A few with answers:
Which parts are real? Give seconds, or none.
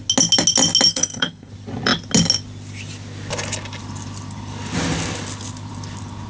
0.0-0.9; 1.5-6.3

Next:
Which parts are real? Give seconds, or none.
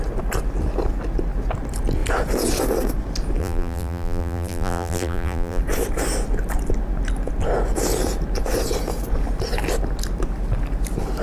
0.0-3.4; 5.6-11.2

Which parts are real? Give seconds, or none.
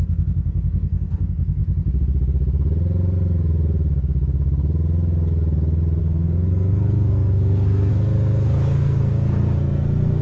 1.6-6.0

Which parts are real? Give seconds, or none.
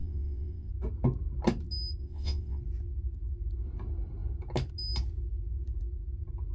0.7-2.0; 2.6-6.5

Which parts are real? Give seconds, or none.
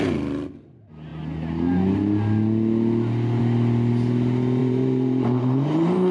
0.0-4.6